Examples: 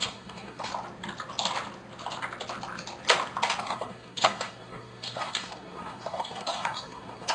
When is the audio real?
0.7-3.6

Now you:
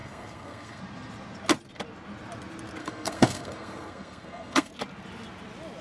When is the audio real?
0.8-2.8; 4.7-5.8

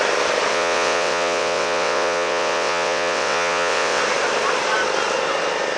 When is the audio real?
0.0-0.5; 4.0-5.8

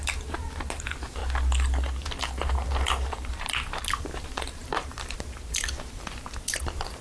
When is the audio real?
1.2-2.2

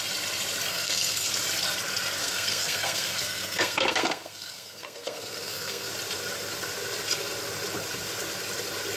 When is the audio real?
0.0-0.7; 1.3-2.2; 5.9-9.0

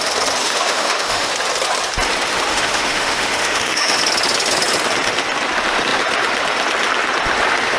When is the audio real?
0.0-0.4; 1.3-2.5; 4.0-7.8

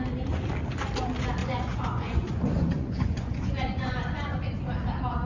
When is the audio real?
0.0-1.4; 4.5-5.2

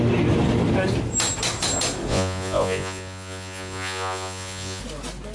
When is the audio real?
0.0-2.1; 4.8-5.3